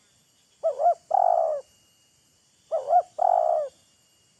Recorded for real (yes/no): yes